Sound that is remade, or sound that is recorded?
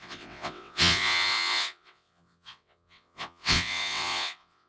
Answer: remade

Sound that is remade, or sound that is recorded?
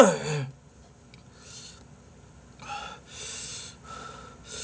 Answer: recorded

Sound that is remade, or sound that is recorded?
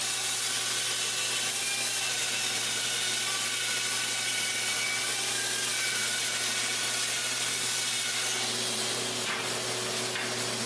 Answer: recorded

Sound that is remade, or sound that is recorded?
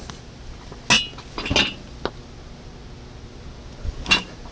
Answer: recorded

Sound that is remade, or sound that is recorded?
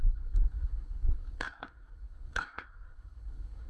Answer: remade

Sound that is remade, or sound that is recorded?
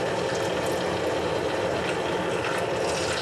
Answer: recorded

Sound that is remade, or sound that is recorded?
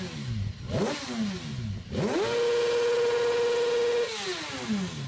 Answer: recorded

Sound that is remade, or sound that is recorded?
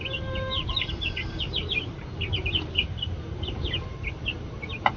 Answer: remade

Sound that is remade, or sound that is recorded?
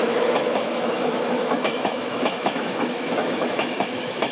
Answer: remade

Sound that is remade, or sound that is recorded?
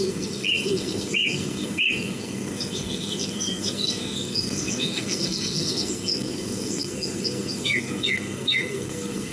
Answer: remade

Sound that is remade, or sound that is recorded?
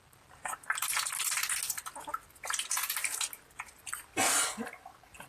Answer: recorded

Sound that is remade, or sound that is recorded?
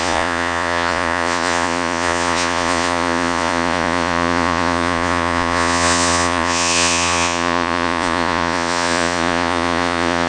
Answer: remade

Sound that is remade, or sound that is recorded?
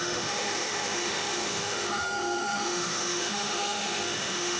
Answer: remade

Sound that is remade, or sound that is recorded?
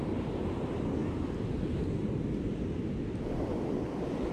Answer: recorded